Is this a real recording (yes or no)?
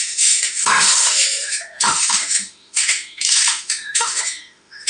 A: no